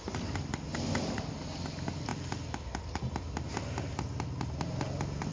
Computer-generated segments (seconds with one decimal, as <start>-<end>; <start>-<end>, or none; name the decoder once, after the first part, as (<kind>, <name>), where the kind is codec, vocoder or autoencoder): none

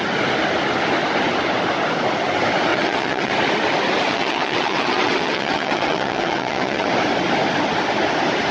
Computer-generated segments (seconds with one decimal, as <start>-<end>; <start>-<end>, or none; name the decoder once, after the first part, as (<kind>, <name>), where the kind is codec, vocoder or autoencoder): 2.7-3.3 (vocoder, WaveNeXt); 4.1-6.9

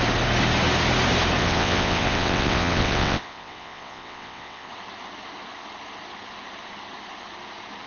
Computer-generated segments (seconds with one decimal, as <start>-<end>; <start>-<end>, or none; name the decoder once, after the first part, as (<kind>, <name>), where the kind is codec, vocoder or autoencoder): 1.4-4.7 (vocoder, WaveNeXt)

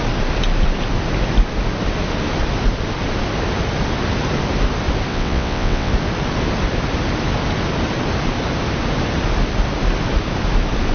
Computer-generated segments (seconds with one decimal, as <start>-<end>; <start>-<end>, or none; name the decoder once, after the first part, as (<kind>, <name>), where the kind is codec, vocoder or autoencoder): 5.1-5.9 (vocoder, WaveNeXt)

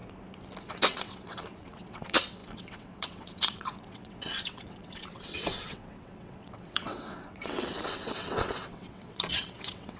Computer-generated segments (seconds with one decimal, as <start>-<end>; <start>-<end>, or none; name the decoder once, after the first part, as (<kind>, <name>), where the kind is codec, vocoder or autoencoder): 0.6-10.0 (vocoder, WaveNeXt)

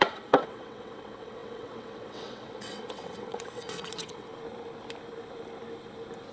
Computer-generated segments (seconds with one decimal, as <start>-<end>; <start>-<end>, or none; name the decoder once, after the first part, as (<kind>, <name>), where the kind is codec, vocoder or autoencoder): 0.0-4.3 (vocoder, WaveNeXt)

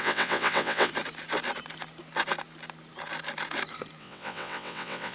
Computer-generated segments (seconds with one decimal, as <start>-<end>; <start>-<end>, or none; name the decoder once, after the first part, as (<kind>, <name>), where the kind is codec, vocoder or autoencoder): 0.0-0.9 (vocoder, WaveNeXt); 4.0-5.1